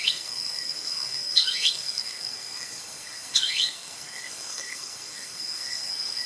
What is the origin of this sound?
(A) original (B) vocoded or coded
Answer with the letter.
B